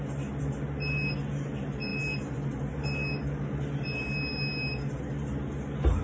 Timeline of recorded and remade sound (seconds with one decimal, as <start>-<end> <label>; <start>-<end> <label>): 0.0-6.0 recorded